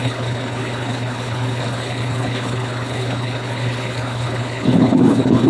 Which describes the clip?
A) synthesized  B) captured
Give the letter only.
A